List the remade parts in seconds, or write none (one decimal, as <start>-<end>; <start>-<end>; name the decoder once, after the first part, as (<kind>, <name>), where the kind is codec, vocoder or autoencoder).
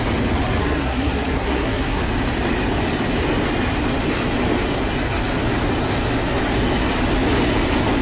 0.6-2.0 (codec, SNAC)